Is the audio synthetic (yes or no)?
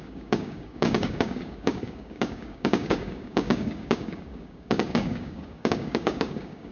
yes